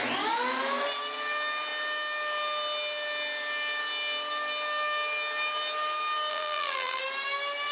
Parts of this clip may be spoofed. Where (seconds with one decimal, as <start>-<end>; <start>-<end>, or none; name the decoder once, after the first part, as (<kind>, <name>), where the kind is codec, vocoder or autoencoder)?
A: 6.3-7.0 (vocoder, BigVGAN v2)